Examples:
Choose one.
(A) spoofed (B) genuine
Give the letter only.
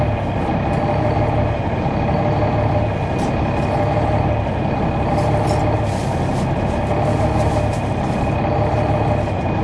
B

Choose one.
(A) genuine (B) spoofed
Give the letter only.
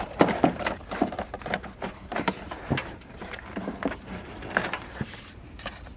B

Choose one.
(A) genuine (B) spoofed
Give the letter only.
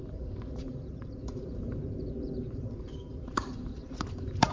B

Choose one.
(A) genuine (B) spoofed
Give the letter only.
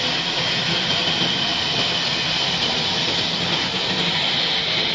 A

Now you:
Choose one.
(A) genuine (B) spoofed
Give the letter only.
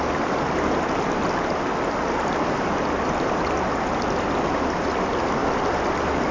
A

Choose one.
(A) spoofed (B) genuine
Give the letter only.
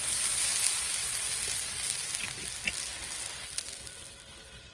B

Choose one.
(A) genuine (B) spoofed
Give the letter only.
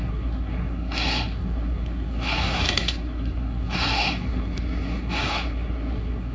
B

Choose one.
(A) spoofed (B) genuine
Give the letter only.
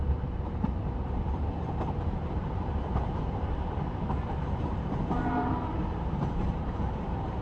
A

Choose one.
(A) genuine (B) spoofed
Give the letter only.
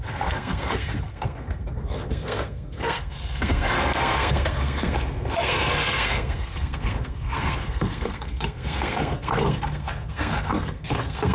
B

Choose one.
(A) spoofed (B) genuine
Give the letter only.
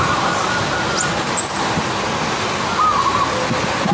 B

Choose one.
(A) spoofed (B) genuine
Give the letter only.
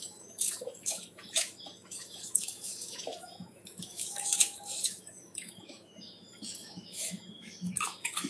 A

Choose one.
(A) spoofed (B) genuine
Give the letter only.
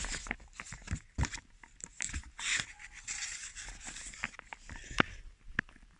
B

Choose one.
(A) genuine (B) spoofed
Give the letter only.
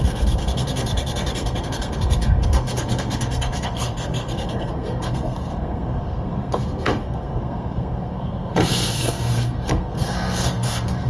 B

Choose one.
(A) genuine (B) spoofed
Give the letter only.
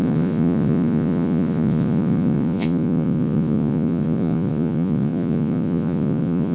B